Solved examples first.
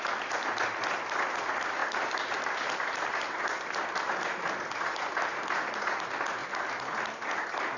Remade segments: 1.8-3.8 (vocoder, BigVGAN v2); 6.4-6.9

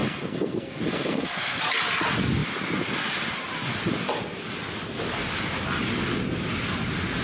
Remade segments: 0.0-1.6 (codec, SNAC)

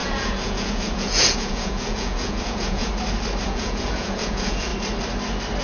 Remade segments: 0.0-2.9 (vocoder, Vocos); 3.4-4.7

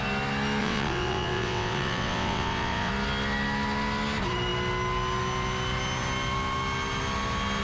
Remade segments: 0.6-2.9 (vocoder, WaveNeXt)

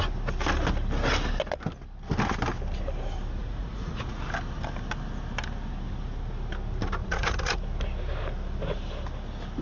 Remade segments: 3.4-4.2 (vocoder, Vocos); 7.0-7.6

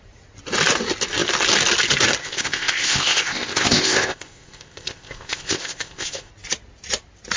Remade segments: 2.2-6.3 (codec, ZipCodec)